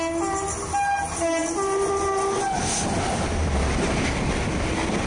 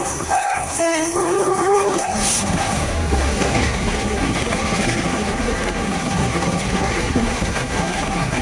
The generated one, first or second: second